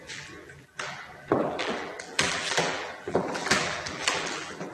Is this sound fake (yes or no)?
yes